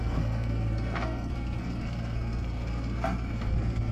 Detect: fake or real fake